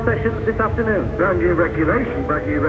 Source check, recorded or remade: remade